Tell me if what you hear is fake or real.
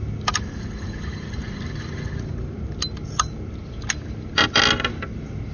real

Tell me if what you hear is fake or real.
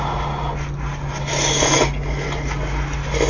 real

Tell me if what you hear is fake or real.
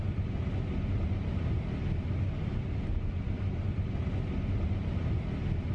real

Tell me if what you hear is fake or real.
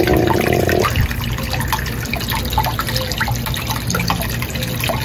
real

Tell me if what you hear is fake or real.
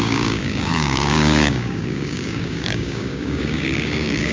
fake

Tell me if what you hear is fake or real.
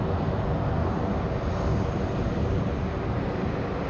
real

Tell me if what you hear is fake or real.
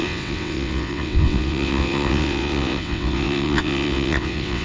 fake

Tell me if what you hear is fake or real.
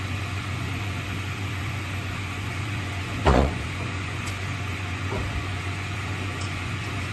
fake